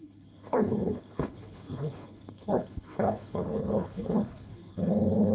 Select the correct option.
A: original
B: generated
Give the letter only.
B